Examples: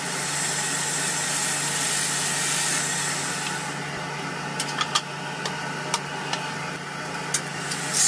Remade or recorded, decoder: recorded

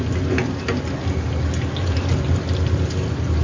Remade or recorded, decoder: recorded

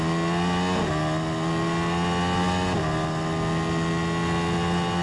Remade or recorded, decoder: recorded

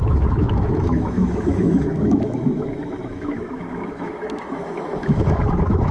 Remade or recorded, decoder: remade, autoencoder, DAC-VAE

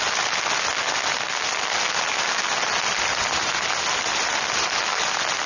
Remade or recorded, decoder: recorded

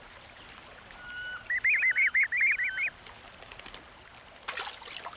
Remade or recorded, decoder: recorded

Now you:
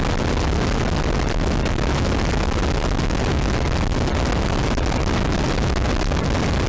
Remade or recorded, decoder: recorded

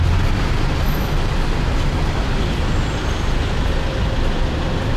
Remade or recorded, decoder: recorded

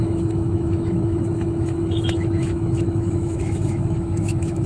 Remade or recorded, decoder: remade, autoencoder, DAC-VAE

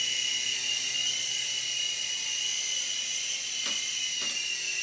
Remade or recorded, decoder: recorded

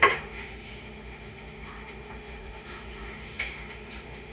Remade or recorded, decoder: remade, autoencoder, DAC-VAE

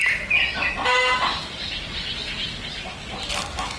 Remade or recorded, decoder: recorded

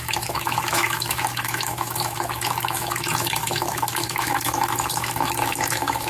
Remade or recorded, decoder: remade, autoencoder, DAC-VAE